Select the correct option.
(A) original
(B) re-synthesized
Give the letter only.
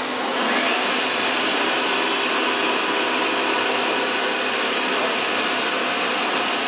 A